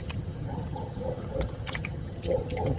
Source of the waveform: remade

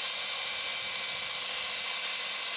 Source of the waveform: recorded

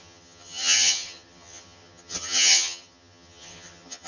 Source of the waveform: remade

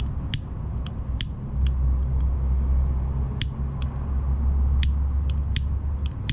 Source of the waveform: recorded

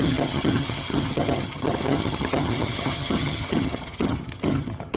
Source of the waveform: remade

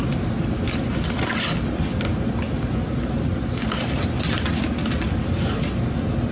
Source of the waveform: recorded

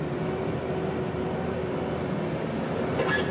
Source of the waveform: recorded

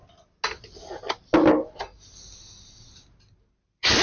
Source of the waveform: recorded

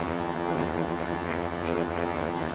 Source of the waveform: remade